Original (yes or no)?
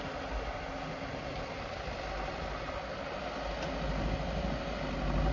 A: yes